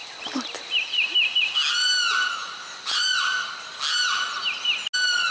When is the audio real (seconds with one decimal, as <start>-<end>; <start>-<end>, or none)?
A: 0.0-2.4; 3.5-5.3